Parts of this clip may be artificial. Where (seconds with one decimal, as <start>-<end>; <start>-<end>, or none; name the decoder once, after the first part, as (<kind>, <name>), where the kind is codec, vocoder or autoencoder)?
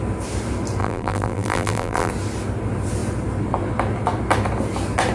0.8-2.1 (vocoder, BigVGAN v2)